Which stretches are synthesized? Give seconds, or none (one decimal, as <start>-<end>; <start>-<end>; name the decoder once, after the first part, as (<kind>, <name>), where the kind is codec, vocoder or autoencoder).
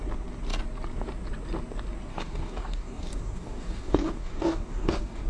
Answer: 2.1-5.3 (codec, DAC)